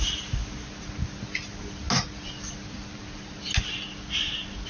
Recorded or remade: recorded